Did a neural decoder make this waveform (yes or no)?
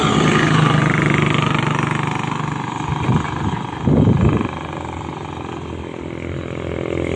no